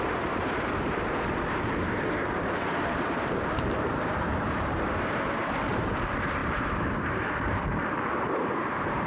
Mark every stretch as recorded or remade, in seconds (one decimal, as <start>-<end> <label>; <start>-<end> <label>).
0.0-9.1 remade